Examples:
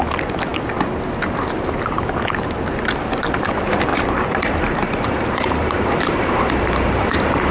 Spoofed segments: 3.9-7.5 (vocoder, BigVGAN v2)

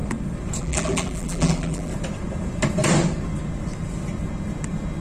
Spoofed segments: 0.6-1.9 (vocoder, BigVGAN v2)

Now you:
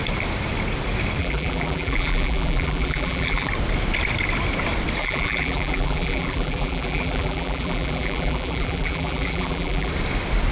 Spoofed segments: 1.2-3.5 (vocoder, BigVGAN v2); 5.0-9.9